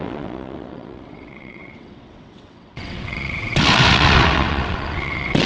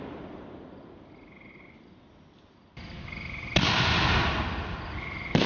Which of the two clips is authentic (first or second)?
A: second